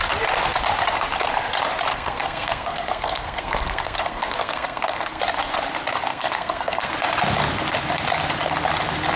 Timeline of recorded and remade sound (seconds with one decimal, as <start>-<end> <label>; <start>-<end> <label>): 0.0-1.9 recorded; 1.9-5.2 remade; 5.2-6.1 recorded; 6.1-6.9 remade; 6.9-9.2 recorded

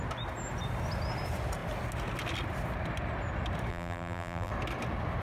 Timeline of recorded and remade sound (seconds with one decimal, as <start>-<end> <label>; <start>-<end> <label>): 0.0-3.7 recorded; 3.7-4.5 remade; 4.5-5.2 recorded

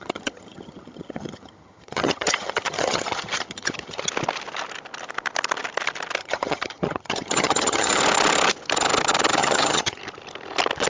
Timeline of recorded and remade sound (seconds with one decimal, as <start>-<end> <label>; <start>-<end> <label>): 0.0-4.1 remade; 4.1-6.2 recorded; 6.2-8.0 remade; 8.0-9.4 recorded; 9.4-10.0 remade; 10.0-10.9 recorded